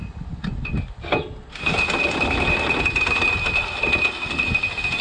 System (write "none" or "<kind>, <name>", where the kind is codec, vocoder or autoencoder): none